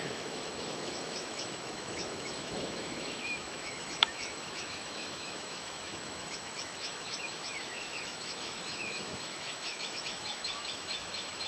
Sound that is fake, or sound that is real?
fake